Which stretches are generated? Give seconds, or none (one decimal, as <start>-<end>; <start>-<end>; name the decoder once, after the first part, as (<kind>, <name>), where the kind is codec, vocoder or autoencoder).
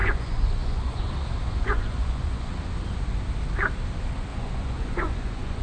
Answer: 0.0-1.1 (vocoder, Vocos); 1.5-2.5; 4.3-5.6